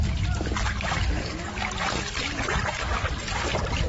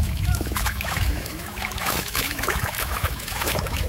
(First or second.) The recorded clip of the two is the first